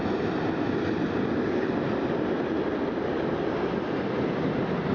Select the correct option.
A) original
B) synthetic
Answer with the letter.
A